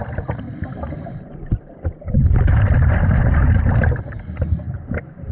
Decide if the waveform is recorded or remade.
remade